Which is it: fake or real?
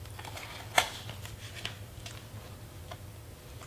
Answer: real